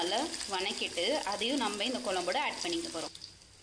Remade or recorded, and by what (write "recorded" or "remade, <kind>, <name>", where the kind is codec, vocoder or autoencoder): recorded